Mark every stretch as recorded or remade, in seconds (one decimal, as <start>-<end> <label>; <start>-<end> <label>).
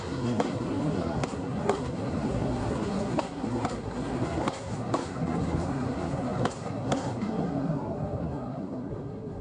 0.0-9.4 remade